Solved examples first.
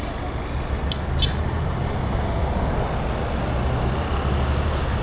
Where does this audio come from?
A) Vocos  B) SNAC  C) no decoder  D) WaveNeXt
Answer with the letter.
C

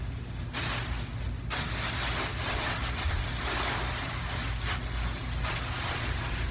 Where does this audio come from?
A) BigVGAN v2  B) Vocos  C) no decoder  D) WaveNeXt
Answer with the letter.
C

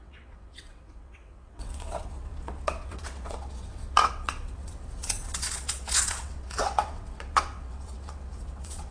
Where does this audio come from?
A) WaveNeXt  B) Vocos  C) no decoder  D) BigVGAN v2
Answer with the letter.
A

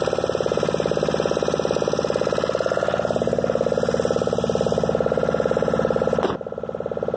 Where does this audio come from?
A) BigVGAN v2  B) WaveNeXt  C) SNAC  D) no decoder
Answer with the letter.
D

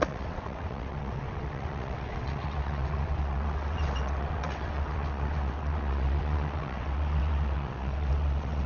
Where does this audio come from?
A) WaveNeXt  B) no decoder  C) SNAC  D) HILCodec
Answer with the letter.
A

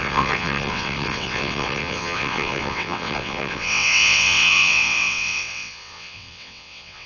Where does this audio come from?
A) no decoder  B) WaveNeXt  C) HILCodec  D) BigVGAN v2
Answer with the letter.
B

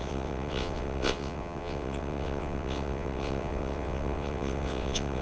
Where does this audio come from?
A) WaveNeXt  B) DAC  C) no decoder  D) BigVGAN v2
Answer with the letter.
A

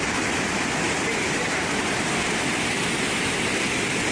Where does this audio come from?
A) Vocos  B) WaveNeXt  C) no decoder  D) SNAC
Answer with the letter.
C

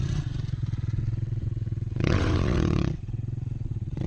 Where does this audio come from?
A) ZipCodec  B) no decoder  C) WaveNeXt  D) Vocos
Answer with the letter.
C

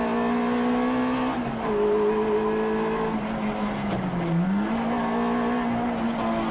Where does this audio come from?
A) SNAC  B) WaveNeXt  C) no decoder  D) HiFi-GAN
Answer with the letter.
C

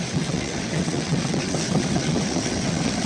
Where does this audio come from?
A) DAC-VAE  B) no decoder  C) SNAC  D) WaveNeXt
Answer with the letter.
D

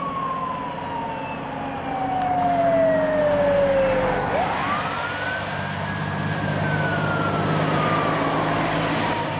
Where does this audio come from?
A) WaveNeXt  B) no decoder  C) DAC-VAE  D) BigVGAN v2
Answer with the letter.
B